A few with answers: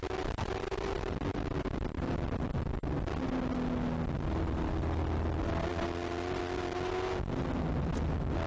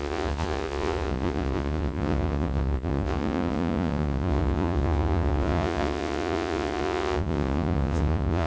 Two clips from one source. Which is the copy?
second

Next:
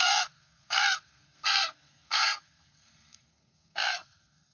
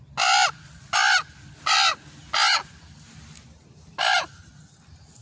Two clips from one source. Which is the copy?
first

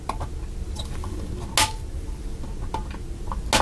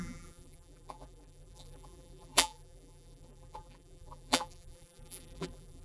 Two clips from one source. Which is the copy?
second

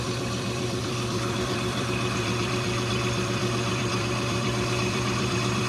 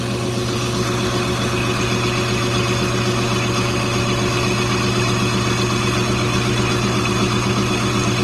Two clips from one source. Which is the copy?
first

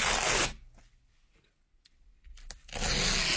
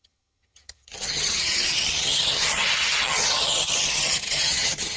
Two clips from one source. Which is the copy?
second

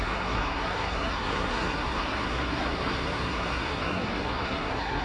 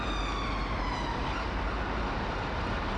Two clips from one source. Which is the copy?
first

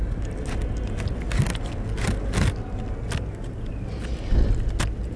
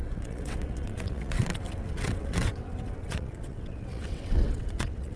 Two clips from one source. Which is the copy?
second